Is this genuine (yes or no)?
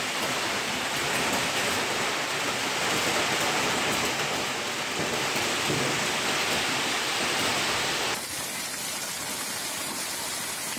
yes